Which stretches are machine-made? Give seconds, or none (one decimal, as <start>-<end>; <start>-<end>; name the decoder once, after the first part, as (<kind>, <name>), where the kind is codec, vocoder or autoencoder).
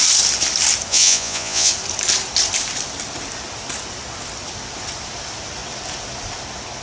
0.9-1.7 (vocoder, Vocos)